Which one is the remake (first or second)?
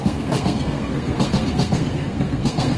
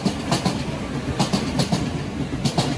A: first